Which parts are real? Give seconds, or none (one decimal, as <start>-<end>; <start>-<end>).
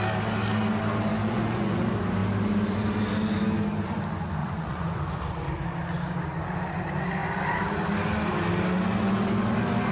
0.0-1.2; 1.8-4.4; 5.0-9.9